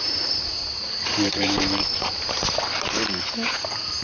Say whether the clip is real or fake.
fake